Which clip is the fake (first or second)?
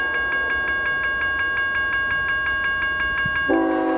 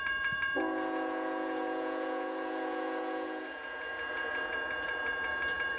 second